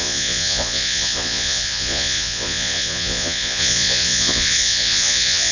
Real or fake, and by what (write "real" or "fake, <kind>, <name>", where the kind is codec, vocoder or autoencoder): fake, vocoder, Vocos